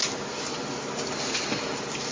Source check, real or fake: real